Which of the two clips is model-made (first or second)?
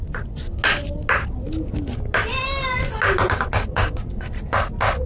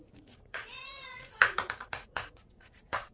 second